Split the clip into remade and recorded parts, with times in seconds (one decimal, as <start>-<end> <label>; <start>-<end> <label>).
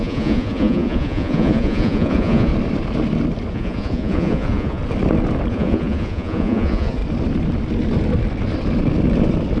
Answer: 0.0-2.5 remade; 2.5-3.5 recorded; 3.5-4.8 remade; 4.8-5.5 recorded; 5.5-7.0 remade; 7.0-9.6 recorded